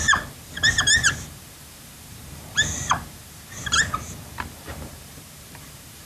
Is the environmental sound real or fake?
fake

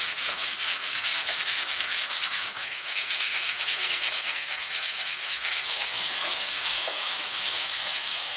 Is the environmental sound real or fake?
fake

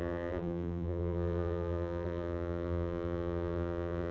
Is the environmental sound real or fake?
fake